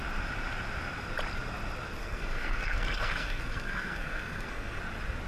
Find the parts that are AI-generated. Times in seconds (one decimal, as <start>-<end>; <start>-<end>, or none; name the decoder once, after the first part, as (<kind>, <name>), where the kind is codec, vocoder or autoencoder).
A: 2.0-4.8 (codec, SNAC)